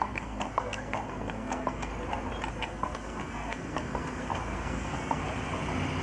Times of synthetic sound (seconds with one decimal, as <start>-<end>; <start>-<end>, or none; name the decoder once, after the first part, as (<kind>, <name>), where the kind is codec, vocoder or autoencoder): 0.0-1.9 (codec, SNAC); 2.5-5.2